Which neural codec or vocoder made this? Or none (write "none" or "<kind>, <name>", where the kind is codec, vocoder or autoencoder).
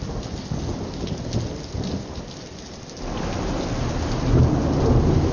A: none